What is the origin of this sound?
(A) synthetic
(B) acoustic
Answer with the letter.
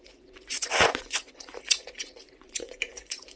A